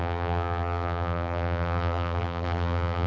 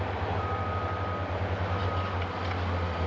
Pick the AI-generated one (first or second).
first